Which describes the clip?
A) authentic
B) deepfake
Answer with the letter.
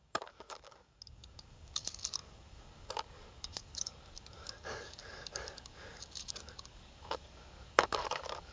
B